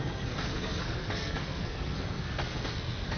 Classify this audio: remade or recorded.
remade